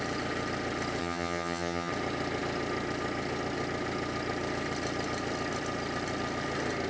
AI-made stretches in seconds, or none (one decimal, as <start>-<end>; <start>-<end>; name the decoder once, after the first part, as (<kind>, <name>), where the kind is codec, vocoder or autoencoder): 1.0-1.9 (vocoder, HiFi-GAN)